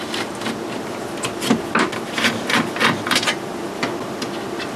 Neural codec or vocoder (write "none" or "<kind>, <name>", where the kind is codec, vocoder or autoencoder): none